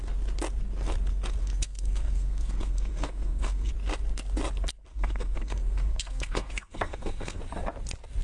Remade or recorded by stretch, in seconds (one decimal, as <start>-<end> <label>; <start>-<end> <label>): 0.0-1.4 recorded; 1.4-3.7 remade; 3.7-4.9 recorded; 4.9-7.4 remade; 7.4-8.2 recorded